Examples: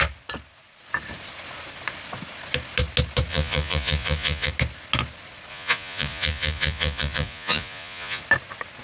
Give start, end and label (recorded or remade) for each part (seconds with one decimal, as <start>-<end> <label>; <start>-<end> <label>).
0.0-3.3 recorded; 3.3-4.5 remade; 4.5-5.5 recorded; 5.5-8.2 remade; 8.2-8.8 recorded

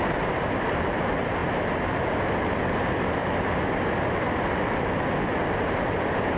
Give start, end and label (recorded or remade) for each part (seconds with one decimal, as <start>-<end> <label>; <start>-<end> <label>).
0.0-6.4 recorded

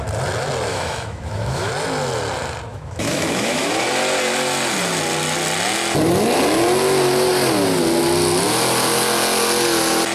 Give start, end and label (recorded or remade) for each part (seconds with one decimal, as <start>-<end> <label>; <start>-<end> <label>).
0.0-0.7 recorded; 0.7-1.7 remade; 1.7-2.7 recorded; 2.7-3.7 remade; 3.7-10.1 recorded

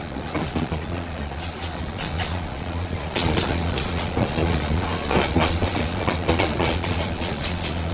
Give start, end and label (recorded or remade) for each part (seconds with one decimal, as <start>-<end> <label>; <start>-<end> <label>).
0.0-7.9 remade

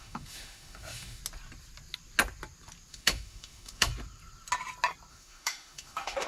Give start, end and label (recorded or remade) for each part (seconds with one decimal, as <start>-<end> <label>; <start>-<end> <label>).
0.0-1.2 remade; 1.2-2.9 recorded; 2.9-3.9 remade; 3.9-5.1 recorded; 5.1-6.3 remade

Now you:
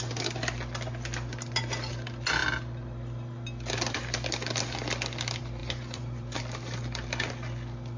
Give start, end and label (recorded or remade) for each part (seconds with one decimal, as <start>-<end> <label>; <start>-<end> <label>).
0.0-5.6 recorded; 5.6-6.4 remade; 6.4-8.0 recorded